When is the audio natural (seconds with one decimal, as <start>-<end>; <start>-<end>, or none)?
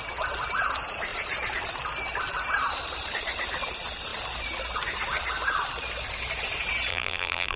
0.0-6.9